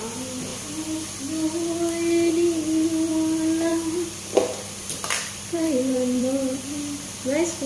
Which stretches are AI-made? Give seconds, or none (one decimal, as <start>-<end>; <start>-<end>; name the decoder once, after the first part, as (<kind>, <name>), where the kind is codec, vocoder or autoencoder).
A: 3.7-6.8 (vocoder, BigVGAN v2)